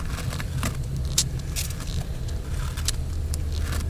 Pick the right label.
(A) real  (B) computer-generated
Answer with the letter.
B